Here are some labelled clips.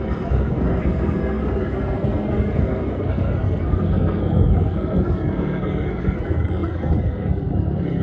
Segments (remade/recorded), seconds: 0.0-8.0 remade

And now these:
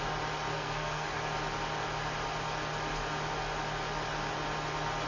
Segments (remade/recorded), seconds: 0.0-0.5 recorded; 0.5-1.2 remade; 1.2-5.1 recorded

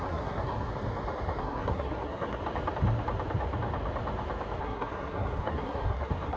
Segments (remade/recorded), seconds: 0.0-0.7 remade; 0.7-1.4 recorded; 1.4-2.4 remade; 2.4-4.6 recorded; 4.6-6.4 remade

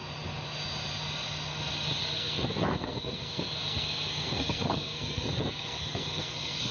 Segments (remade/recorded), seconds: 0.0-2.0 recorded; 2.0-6.7 remade